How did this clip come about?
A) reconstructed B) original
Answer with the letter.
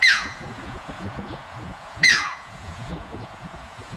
A